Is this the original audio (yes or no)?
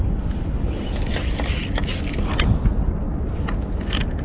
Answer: yes